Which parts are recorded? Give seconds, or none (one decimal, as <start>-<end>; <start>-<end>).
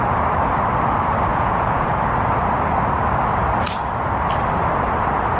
0.0-1.3; 1.9-5.4